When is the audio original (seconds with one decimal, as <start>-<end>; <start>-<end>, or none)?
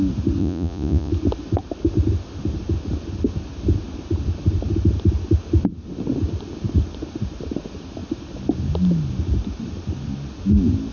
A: 0.0-0.4; 1.1-10.9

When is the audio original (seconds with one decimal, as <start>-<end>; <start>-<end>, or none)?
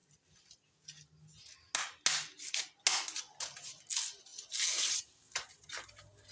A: 0.0-6.3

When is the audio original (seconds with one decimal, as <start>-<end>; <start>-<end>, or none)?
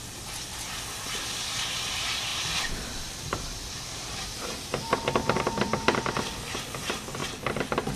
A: 0.0-2.3; 5.8-8.0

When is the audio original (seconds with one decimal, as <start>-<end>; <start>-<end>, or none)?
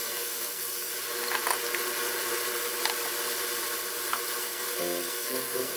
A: 0.9-4.4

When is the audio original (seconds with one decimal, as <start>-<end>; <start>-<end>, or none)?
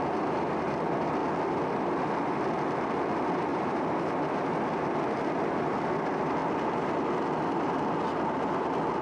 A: 0.0-3.5; 4.2-9.0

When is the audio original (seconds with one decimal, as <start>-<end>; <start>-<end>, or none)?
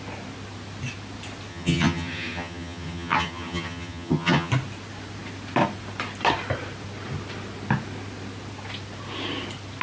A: 0.0-1.5; 4.5-9.8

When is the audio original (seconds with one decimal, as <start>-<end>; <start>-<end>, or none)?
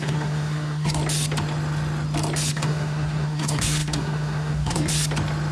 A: 1.0-2.5; 4.9-5.5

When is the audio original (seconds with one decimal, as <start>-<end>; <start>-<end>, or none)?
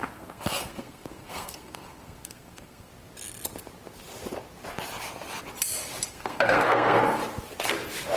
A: 2.9-6.1; 7.2-8.2